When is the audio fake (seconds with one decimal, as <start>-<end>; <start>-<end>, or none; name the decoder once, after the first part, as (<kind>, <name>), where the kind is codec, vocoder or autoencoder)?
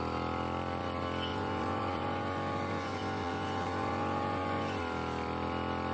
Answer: 1.3-4.8 (vocoder, Vocos)